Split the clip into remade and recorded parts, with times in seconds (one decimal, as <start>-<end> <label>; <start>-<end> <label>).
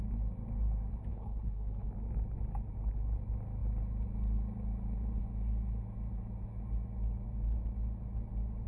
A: 0.0-1.1 recorded; 1.1-1.9 remade; 1.9-8.7 recorded